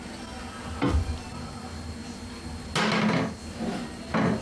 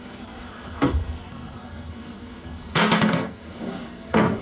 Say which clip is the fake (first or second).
second